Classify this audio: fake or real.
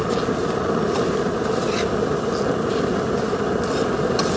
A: real